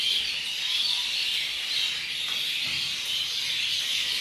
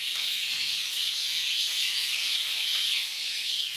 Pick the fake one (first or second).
second